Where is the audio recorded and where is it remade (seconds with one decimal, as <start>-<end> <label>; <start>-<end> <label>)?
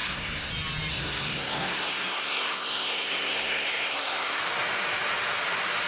0.0-0.5 remade; 0.5-0.9 recorded; 0.9-4.4 remade; 4.4-5.9 recorded